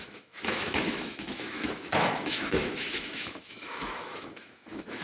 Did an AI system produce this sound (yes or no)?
yes